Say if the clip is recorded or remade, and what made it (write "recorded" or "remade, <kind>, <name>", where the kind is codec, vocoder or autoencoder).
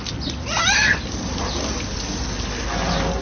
recorded